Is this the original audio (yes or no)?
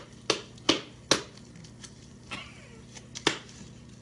yes